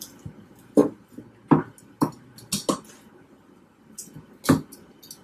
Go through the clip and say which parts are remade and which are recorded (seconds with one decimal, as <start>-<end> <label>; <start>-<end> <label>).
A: 0.0-5.2 recorded